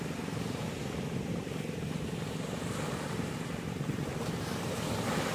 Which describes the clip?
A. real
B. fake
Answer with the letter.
B